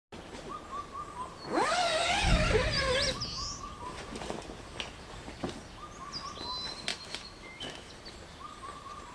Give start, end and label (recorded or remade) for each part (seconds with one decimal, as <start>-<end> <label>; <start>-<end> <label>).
0.0-6.9 recorded; 6.9-7.9 remade; 7.9-9.1 recorded